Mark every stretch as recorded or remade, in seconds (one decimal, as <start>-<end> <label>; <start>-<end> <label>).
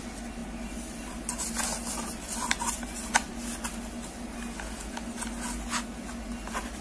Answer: 0.0-6.8 recorded